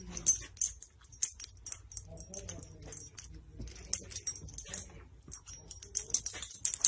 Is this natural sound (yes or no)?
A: yes